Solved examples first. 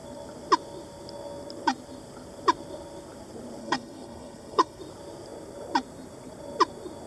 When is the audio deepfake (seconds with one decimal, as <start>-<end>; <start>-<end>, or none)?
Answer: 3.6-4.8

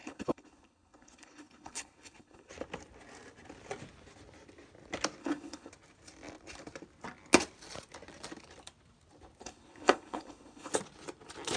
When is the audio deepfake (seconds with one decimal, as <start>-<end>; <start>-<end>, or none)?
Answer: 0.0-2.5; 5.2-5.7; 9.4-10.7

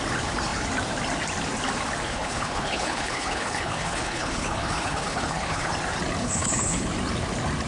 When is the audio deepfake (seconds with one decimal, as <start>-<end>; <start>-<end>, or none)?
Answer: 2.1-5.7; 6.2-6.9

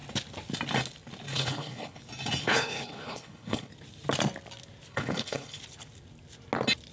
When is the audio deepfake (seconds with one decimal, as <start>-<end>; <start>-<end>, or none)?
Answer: 1.3-2.0; 2.4-3.7; 4.9-5.6